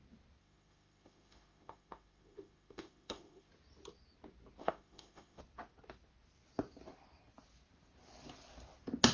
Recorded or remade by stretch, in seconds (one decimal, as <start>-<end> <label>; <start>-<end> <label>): 0.0-0.4 recorded; 0.4-3.5 remade; 3.5-4.6 recorded; 4.6-5.4 remade; 5.4-9.1 recorded

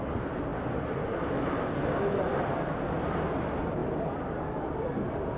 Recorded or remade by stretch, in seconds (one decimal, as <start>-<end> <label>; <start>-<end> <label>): 0.0-5.4 recorded

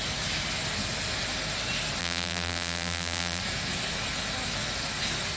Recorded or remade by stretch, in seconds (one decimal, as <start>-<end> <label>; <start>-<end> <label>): 0.0-2.0 recorded; 2.0-3.4 remade; 3.4-5.4 recorded

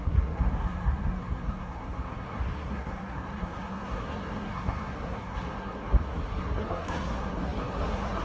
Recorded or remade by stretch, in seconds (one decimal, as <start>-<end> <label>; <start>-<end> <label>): 0.0-8.2 remade